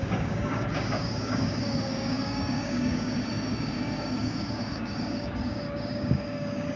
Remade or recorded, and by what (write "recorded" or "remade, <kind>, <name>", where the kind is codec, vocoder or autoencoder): remade, codec, DAC